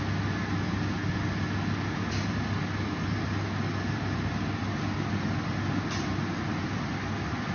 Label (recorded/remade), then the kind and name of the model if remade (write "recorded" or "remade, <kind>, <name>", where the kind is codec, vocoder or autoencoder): recorded